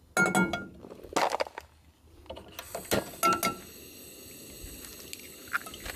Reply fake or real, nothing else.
real